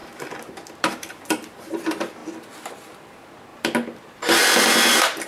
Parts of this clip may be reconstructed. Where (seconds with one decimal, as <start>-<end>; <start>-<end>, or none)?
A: 0.0-1.7; 3.5-5.3